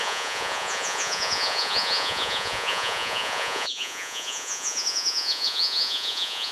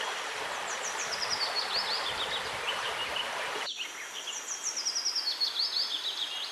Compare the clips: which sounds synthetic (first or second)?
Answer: first